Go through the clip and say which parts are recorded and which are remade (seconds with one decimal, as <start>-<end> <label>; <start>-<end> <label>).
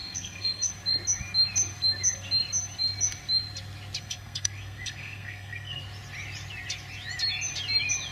0.0-0.7 remade; 0.7-4.0 recorded; 4.0-5.8 remade; 5.8-8.1 recorded